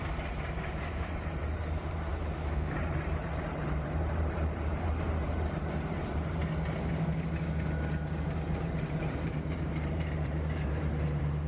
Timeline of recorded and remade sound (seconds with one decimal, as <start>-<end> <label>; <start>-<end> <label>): 0.0-6.4 remade; 6.4-8.3 recorded; 8.3-11.5 remade